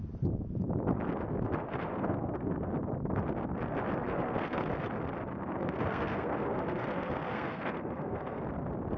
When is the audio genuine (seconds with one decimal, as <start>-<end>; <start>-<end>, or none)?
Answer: 0.0-1.9; 2.7-4.1; 4.6-5.3; 8.4-9.0